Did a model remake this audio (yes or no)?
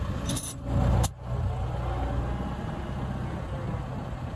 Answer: no